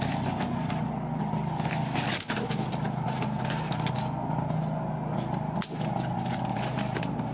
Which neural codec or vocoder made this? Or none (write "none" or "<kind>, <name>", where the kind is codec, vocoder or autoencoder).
none